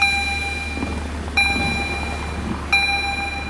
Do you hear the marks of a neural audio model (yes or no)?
no